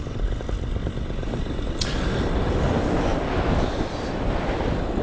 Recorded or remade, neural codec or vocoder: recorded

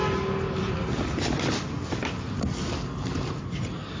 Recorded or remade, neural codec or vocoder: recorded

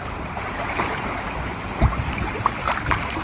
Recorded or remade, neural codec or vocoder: recorded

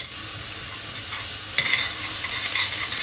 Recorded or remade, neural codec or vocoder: recorded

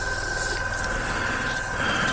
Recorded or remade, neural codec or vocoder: recorded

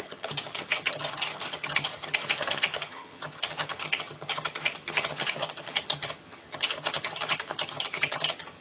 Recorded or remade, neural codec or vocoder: remade, vocoder, HiFi-GAN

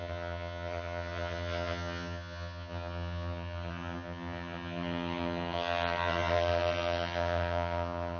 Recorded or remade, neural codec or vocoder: remade, vocoder, HiFi-GAN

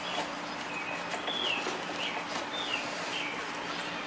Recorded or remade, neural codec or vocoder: recorded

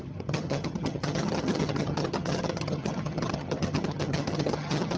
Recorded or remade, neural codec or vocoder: remade, vocoder, HiFi-GAN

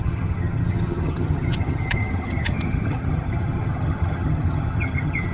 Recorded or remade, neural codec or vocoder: remade, vocoder, HiFi-GAN